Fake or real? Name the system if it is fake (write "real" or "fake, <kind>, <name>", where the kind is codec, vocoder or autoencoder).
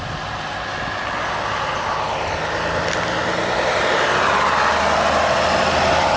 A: real